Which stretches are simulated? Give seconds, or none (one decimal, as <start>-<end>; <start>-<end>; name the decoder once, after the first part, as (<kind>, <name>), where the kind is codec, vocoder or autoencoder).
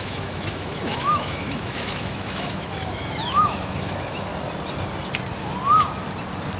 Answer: 0.0-4.3 (autoencoder, DAC-VAE)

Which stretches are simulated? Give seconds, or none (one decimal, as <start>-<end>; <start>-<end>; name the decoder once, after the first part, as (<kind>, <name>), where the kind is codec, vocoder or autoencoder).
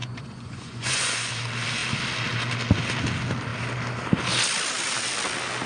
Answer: 0.0-1.3 (vocoder, Vocos)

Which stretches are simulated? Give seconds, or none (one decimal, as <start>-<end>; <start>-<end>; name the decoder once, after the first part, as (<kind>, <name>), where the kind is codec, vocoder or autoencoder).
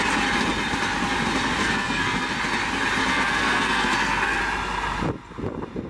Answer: 1.6-2.3 (codec, SNAC); 3.1-4.4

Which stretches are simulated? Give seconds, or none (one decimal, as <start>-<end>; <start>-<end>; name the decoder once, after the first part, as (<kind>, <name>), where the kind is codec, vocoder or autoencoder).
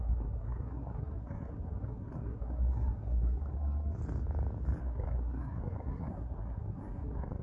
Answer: 0.0-4.0 (codec, SNAC); 4.8-7.4